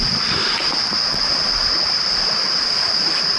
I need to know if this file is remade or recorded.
remade